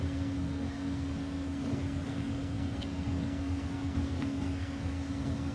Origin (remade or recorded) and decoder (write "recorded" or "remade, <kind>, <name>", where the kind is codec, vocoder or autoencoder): remade, codec, SNAC